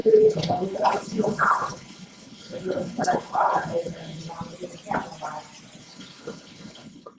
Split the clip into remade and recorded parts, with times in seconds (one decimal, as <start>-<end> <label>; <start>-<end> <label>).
0.0-4.3 remade; 4.3-5.8 recorded; 5.8-7.2 remade